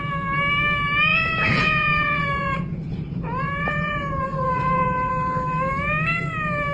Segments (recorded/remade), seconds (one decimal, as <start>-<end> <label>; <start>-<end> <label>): 0.0-1.1 recorded; 1.1-5.1 remade; 5.1-6.7 recorded